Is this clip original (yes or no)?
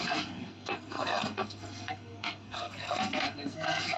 no